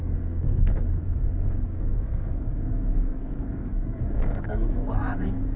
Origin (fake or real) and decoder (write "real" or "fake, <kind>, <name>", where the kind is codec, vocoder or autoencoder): fake, codec, SNAC